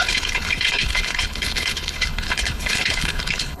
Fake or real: fake